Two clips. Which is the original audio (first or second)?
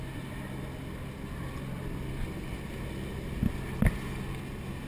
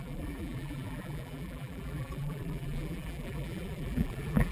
first